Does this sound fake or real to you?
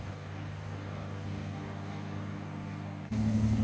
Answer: fake